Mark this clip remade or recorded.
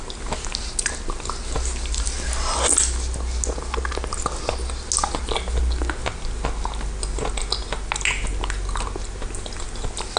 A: recorded